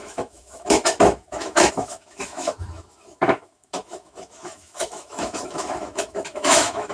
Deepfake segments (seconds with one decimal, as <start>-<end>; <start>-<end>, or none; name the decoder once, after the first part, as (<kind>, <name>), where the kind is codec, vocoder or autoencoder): 0.0-6.9 (autoencoder, DAC-VAE)